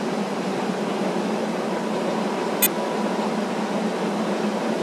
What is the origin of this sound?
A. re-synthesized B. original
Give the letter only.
B